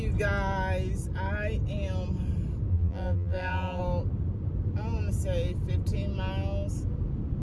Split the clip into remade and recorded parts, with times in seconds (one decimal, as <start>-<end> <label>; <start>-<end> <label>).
0.0-2.7 recorded; 2.7-3.8 remade; 3.8-7.4 recorded